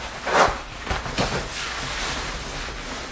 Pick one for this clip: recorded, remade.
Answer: recorded